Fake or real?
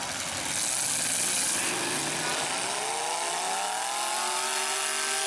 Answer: real